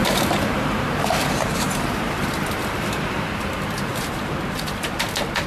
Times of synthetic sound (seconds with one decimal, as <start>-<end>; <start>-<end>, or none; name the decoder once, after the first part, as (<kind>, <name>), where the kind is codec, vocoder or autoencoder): 0.0-3.3 (vocoder, BigVGAN v2); 3.9-4.6